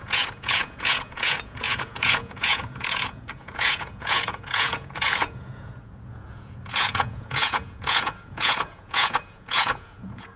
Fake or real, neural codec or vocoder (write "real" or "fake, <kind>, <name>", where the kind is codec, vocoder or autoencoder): fake, vocoder, Vocos